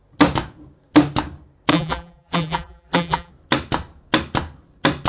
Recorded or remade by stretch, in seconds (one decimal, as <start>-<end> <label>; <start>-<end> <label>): 0.0-1.7 recorded; 1.7-3.3 remade; 3.3-5.1 recorded